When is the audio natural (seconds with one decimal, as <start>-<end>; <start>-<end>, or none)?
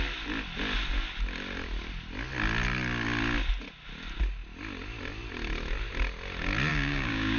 0.0-6.7